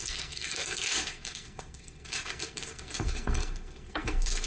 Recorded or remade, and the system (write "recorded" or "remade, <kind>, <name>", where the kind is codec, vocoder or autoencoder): remade, codec, SNAC